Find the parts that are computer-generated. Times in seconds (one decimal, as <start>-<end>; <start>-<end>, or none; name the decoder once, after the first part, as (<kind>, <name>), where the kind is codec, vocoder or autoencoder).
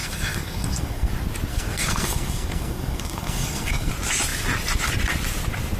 0.0-1.1 (codec, SNAC); 1.5-3.9